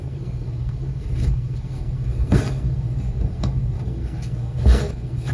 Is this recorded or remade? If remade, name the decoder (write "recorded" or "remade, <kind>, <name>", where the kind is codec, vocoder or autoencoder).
remade, codec, SNAC